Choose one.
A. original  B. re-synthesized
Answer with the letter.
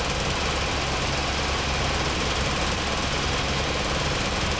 A